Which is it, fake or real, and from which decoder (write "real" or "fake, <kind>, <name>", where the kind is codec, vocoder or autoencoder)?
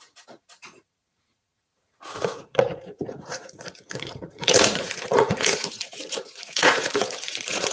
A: fake, vocoder, Vocos